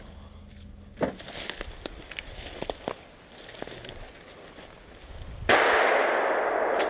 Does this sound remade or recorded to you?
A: recorded